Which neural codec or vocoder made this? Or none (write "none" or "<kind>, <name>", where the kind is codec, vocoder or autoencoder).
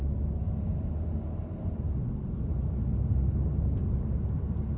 none